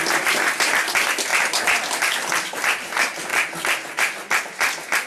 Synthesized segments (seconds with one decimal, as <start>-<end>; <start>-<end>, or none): none